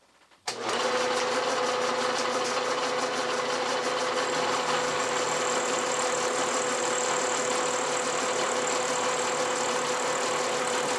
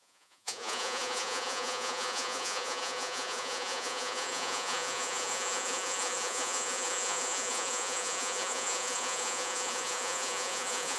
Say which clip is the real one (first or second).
first